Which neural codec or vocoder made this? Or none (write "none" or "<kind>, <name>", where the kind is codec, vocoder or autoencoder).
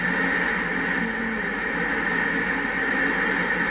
none